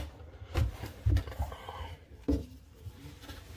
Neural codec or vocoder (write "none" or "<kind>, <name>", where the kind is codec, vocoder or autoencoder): vocoder, BigVGAN v2